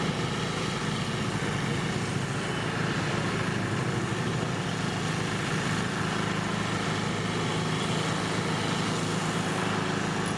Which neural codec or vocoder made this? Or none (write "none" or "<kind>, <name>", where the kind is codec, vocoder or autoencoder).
none